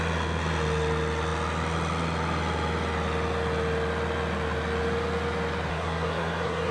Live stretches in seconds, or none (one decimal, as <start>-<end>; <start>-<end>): 0.0-5.7